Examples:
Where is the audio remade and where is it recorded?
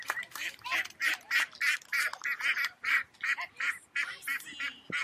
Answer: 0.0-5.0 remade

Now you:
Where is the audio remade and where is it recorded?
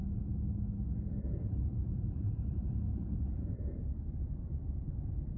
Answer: 0.0-1.7 recorded; 1.7-4.9 remade; 4.9-5.4 recorded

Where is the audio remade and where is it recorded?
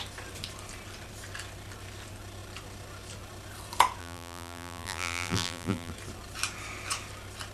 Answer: 0.0-4.0 recorded; 4.0-5.9 remade; 5.9-7.5 recorded